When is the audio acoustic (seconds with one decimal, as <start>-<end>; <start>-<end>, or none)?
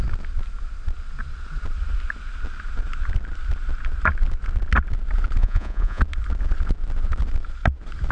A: 0.0-5.4; 6.0-8.1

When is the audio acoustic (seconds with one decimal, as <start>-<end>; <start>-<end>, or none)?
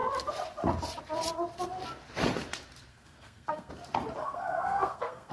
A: 0.0-2.9; 3.7-4.2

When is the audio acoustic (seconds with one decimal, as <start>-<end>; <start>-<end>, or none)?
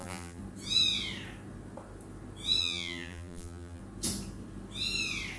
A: 0.4-2.6; 3.8-5.4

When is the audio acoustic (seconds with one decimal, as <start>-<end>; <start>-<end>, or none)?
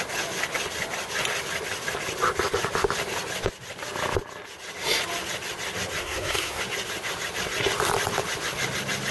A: 0.0-6.0; 6.6-9.1